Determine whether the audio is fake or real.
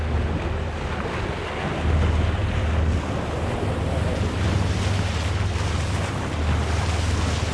real